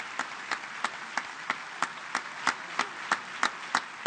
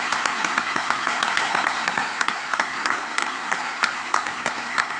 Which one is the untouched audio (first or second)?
first